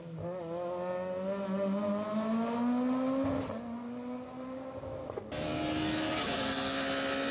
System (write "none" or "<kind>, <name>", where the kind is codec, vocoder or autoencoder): none